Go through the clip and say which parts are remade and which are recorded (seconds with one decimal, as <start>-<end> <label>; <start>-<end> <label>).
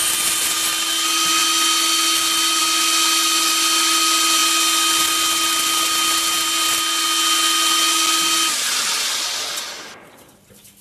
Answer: 0.0-10.8 recorded